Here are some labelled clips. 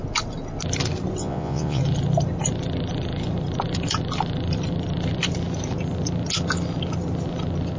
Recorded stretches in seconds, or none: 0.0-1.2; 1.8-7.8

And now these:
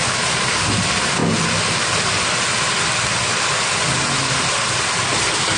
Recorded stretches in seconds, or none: 0.0-5.6

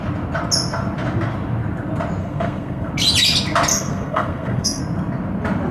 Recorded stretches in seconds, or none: 0.0-2.2; 2.9-3.7; 4.8-5.7

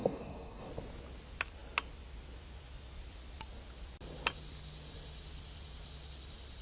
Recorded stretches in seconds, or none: 0.7-6.6

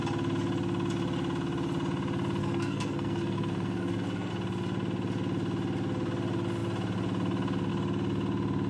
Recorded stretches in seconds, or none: 0.0-2.4; 4.3-8.7